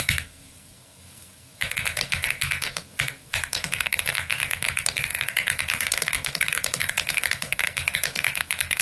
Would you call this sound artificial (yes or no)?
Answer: yes